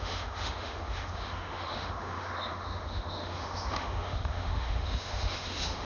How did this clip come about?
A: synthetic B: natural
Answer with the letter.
A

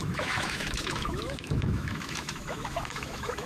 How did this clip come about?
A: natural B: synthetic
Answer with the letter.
B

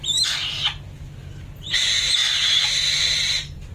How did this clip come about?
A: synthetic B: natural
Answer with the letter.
B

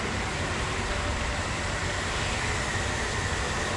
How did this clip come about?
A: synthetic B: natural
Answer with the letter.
B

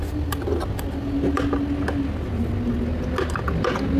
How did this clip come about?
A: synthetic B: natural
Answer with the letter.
B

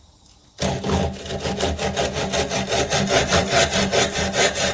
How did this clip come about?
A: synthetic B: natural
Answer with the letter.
B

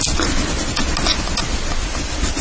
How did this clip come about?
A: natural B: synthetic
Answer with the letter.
A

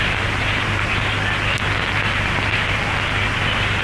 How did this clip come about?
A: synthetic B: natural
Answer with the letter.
B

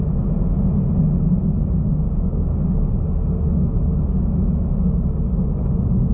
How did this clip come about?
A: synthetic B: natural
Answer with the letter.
B